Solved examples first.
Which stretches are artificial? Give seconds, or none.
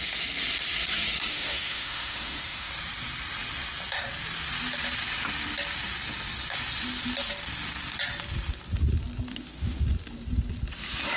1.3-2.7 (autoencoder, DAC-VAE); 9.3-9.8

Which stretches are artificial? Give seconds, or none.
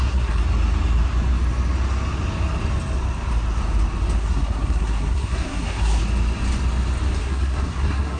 0.0-0.4 (codec, SNAC); 4.2-6.0; 7.2-8.2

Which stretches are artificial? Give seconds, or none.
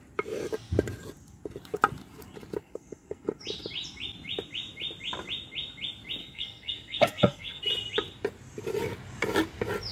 2.6-3.4 (codec, SNAC); 6.2-7.6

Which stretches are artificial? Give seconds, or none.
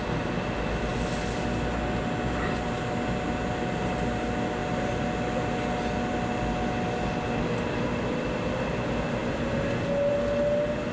none